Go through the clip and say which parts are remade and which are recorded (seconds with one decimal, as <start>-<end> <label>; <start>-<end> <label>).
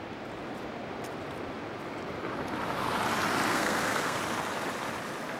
0.0-3.5 recorded; 3.5-4.2 remade; 4.2-5.4 recorded